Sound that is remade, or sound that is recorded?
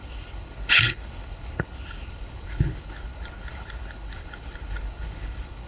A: remade